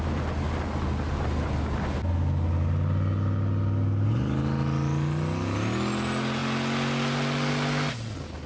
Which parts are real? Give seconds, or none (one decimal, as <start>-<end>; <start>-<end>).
0.0-8.5